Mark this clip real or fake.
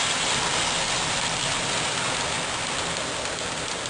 real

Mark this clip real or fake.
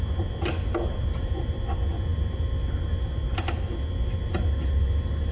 real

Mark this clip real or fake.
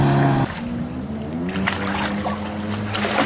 real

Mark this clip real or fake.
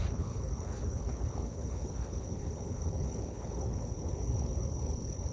fake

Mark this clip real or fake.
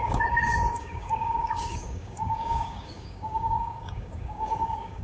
fake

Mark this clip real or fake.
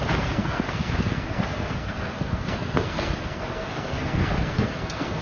fake